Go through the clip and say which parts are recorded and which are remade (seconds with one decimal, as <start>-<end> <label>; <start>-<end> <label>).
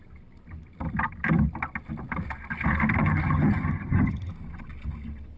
0.0-3.0 recorded; 3.0-4.3 remade; 4.3-5.4 recorded